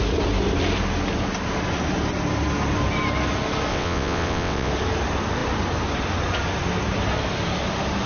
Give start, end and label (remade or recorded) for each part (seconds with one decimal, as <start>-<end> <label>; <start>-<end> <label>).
0.0-3.7 recorded; 3.7-4.7 remade; 4.7-8.1 recorded